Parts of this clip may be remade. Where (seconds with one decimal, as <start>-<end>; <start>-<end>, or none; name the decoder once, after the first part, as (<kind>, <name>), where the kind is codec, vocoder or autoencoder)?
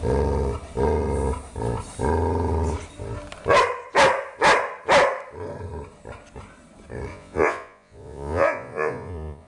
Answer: 7.1-9.5 (vocoder, Vocos)